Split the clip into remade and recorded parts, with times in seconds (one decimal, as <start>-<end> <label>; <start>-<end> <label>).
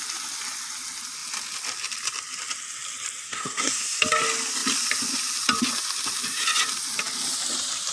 0.0-3.2 recorded; 3.2-4.0 remade; 4.0-7.9 recorded